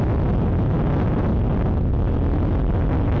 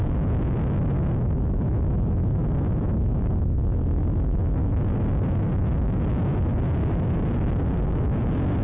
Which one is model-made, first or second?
second